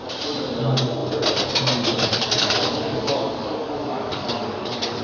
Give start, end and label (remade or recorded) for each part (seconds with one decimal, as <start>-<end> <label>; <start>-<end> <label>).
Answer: 0.0-1.9 recorded; 1.9-5.0 remade